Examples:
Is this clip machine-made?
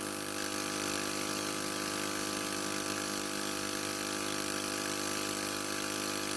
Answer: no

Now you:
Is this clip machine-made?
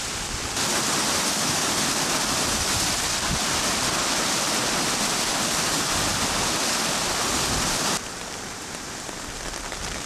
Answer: no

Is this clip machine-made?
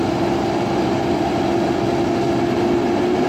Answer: no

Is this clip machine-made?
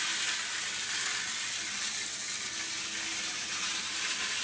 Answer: no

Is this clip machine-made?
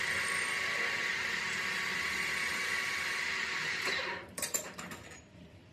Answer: yes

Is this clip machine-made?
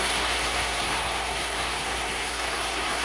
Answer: yes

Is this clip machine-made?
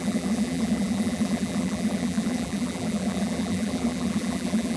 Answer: yes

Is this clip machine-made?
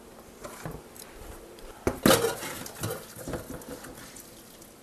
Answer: no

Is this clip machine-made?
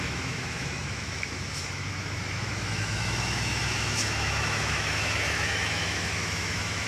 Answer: yes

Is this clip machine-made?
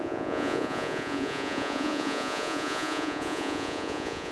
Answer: yes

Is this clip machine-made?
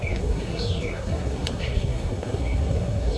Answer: yes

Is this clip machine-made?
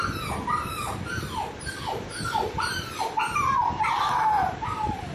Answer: yes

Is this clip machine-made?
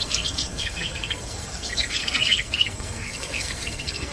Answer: yes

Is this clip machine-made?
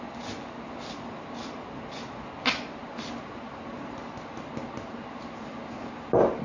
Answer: no